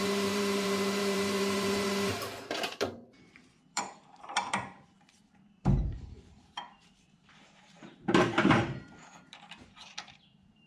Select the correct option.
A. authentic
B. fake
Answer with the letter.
B